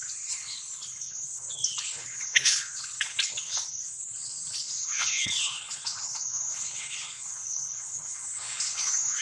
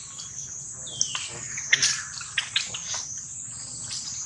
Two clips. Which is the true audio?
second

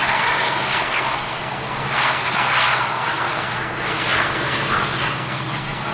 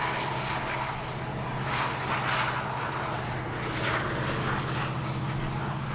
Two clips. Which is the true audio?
second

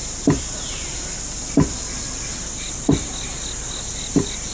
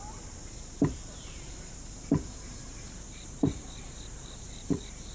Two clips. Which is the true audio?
first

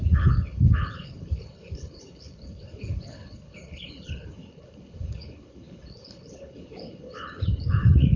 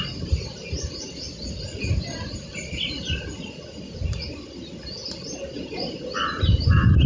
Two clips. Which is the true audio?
second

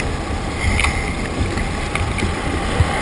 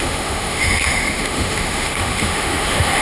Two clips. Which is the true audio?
first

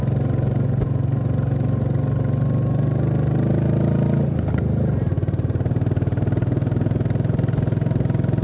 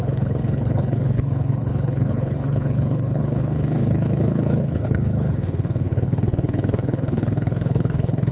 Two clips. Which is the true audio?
first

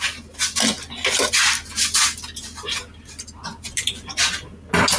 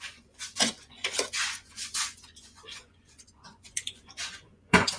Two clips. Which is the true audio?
first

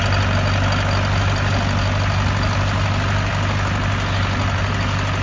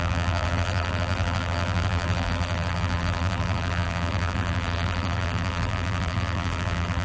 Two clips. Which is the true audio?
first